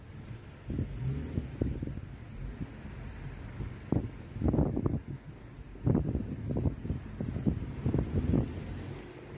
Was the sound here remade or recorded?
recorded